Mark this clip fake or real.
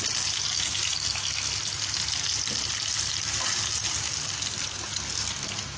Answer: real